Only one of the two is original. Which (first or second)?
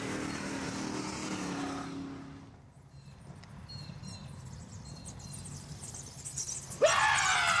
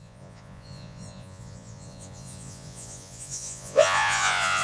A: first